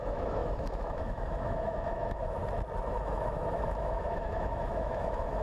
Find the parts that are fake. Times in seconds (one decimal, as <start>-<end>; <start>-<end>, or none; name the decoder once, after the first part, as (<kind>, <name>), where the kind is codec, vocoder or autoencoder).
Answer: 0.0-2.4 (autoencoder, DAC-VAE); 2.9-5.4